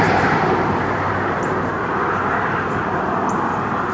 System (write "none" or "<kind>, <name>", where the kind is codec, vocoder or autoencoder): vocoder, BigVGAN v2